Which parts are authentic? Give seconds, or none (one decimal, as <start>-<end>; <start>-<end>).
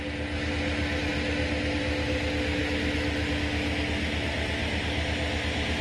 0.0-5.8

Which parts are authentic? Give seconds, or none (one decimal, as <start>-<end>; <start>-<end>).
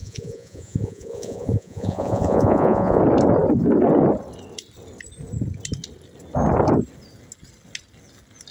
3.0-8.5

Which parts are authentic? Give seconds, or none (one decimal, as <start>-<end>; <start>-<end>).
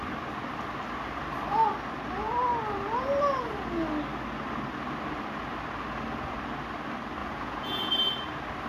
0.0-7.2; 7.9-8.7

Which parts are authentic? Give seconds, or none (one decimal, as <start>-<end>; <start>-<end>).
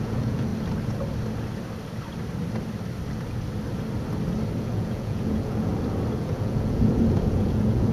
0.5-4.6; 5.7-6.2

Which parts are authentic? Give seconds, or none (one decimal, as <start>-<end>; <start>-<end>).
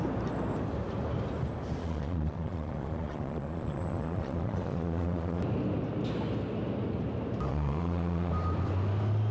0.0-1.8; 5.4-7.5; 8.3-9.3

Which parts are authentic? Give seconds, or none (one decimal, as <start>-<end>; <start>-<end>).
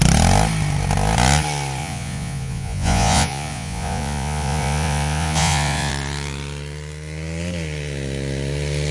0.0-1.8; 5.9-8.9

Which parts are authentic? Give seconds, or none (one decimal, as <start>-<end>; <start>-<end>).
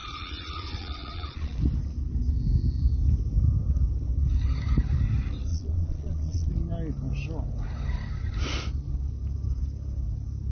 1.6-5.5; 6.5-10.5